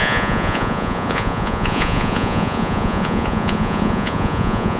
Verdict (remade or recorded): remade